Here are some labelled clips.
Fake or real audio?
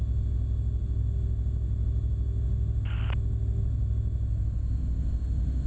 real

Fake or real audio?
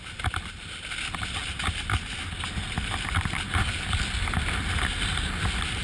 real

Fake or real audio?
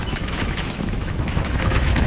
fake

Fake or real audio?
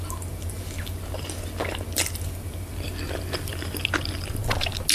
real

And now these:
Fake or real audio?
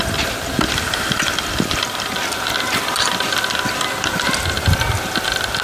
real